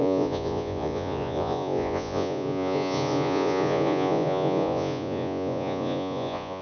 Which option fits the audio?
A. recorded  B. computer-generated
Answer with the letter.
B